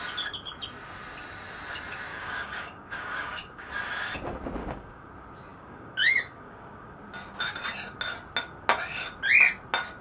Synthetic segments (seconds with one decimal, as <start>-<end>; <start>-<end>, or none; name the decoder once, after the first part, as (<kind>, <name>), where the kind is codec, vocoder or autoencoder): 2.1-3.7 (codec, DAC); 4.6-5.1; 5.5-7.0